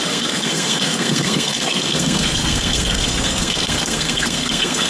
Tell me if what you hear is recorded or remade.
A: remade